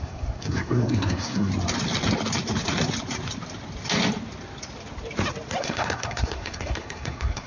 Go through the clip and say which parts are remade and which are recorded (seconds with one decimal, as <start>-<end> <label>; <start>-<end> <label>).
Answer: 0.0-1.5 remade; 1.5-5.6 recorded; 5.6-7.5 remade